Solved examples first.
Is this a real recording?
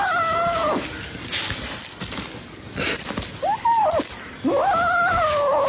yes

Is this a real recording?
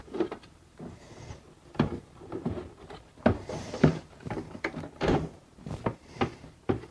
no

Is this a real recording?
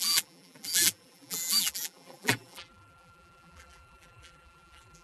no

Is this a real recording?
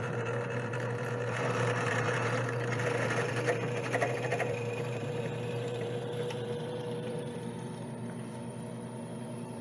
no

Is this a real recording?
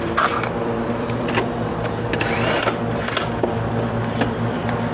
no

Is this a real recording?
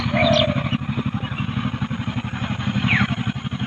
yes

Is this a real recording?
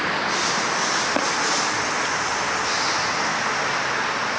yes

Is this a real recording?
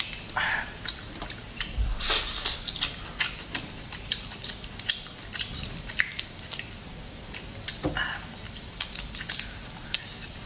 no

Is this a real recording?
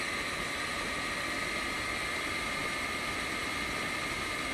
yes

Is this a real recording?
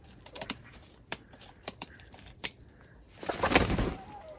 no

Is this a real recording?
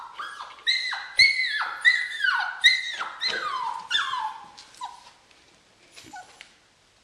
yes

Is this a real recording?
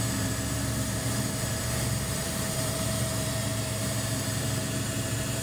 no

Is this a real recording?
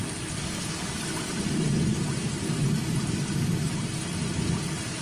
yes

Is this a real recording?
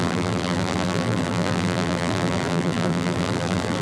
no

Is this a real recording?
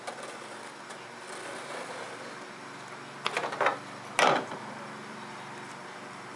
yes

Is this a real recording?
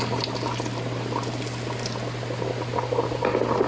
yes